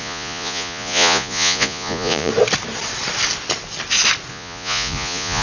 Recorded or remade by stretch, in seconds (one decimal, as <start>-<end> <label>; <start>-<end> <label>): 0.0-2.3 remade; 2.3-4.3 recorded; 4.3-5.4 remade